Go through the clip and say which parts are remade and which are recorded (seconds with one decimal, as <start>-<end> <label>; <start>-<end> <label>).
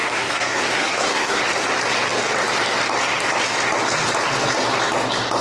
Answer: 0.0-1.4 remade; 1.4-5.4 recorded